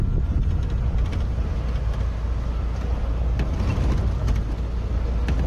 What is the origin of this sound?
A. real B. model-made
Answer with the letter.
A